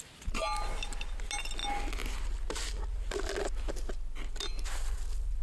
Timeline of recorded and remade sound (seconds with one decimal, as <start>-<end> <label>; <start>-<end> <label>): 0.0-5.4 recorded